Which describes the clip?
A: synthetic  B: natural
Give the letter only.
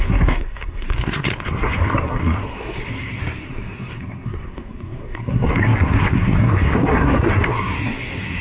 A